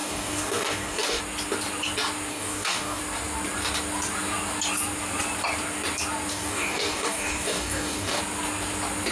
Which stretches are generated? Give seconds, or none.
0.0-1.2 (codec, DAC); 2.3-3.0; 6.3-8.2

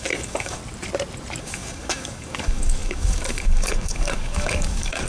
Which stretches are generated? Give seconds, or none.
0.0-0.6 (codec, DAC); 1.4-5.1

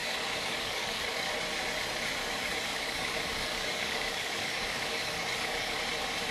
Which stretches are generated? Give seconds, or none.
0.0-1.3 (codec, DAC); 2.2-5.8

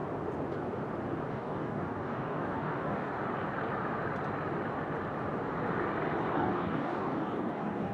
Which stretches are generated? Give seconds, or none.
1.3-3.1 (codec, DAC); 6.3-7.9